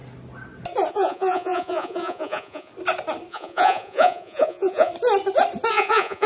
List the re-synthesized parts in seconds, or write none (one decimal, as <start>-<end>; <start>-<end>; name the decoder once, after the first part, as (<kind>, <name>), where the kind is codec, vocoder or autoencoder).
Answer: 0.9-2.7 (vocoder, Vocos); 3.3-4.9; 5.7-6.3